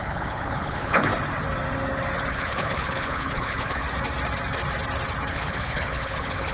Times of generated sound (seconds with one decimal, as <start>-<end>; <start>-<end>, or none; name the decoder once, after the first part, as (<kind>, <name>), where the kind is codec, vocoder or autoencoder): 0.0-1.1 (codec, HILCodec); 2.3-3.8; 5.3-6.5